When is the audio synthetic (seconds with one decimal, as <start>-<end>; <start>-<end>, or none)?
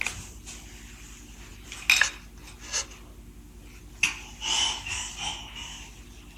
none